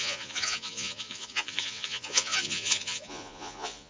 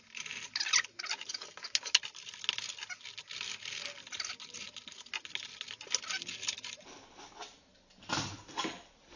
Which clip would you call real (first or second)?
second